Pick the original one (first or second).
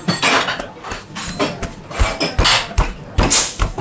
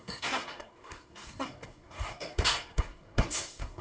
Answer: first